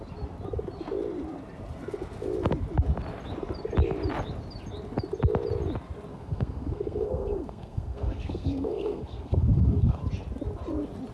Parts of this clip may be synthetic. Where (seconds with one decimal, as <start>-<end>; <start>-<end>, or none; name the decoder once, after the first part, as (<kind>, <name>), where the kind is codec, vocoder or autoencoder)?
6.1-10.0 (codec, SNAC)